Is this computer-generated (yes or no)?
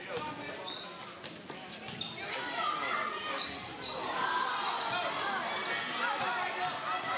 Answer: no